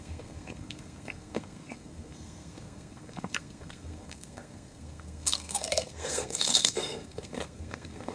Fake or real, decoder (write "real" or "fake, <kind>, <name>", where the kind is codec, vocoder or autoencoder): fake, codec, SNAC